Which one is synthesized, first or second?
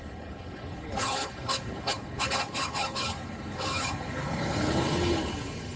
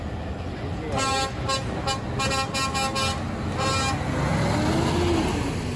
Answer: first